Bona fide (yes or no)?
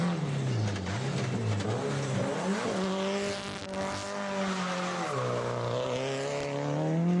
yes